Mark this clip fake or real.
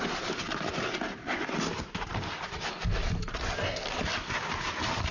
real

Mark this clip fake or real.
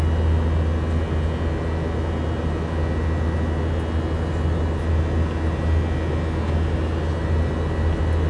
real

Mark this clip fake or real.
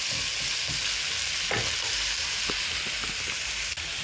real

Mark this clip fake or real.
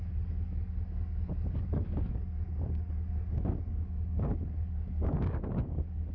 fake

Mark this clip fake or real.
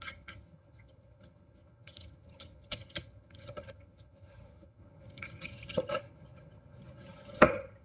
fake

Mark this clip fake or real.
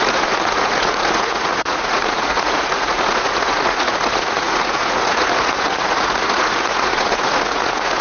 fake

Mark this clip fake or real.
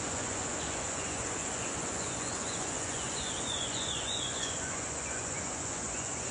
fake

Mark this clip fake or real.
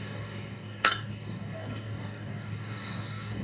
fake